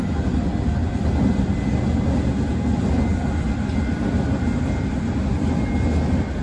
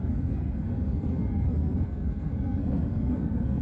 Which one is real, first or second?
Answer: first